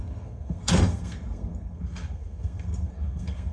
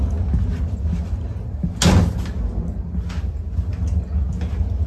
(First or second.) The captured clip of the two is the second